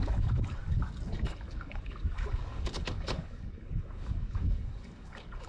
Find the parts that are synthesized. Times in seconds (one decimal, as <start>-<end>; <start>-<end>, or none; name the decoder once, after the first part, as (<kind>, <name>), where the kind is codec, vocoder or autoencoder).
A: 0.0-5.5 (codec, DAC)